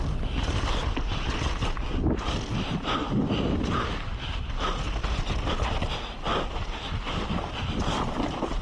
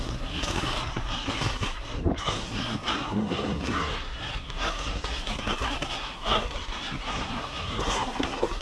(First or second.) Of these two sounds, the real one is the first